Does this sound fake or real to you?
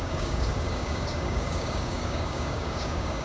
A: fake